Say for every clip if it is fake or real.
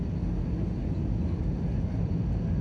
real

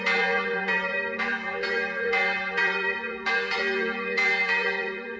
fake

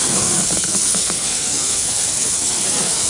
fake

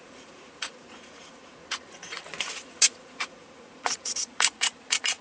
fake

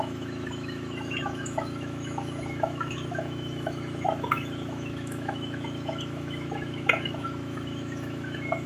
fake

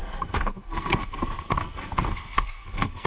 fake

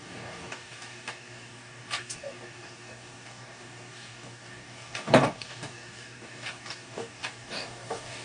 fake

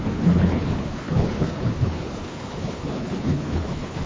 fake